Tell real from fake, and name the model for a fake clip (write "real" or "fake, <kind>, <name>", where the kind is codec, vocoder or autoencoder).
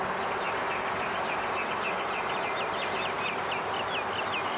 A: real